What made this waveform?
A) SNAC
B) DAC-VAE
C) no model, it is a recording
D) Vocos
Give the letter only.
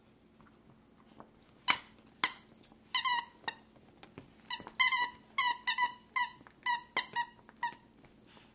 C